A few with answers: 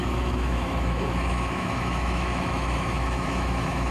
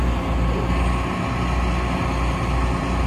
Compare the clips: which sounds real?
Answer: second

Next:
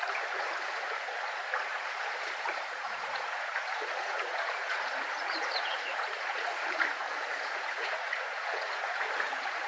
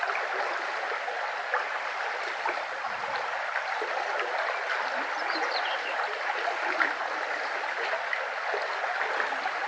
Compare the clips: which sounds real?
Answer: second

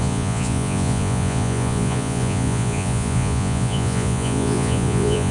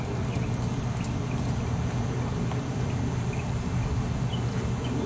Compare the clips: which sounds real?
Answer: second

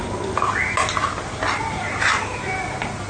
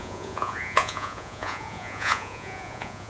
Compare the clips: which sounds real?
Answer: first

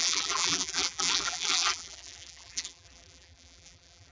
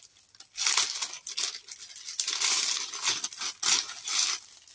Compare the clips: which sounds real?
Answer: second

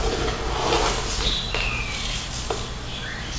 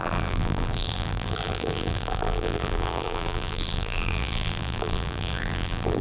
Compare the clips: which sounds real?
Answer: first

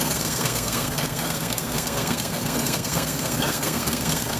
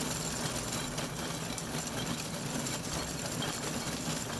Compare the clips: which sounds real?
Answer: second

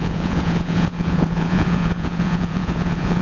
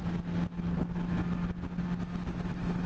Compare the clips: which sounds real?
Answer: second